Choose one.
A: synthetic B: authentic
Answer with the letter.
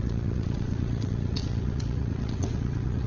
A